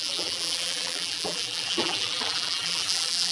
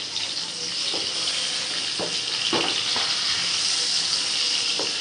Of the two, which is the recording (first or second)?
second